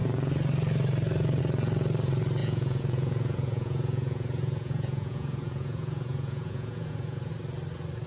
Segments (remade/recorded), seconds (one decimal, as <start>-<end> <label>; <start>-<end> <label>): 0.0-2.4 recorded; 2.4-7.3 remade; 7.3-8.1 recorded